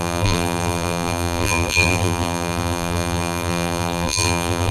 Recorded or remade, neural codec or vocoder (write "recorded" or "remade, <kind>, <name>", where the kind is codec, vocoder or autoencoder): remade, vocoder, BigVGAN v2